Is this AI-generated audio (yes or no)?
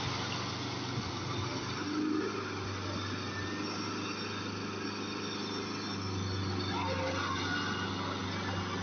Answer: no